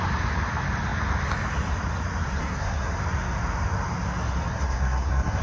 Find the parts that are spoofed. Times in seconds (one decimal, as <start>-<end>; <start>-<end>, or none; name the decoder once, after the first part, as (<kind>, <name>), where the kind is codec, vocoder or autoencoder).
2.4-3.0 (codec, SNAC); 4.5-5.4